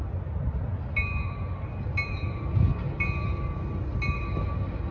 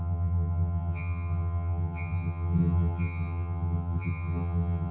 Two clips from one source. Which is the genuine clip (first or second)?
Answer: first